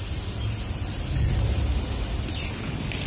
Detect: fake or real real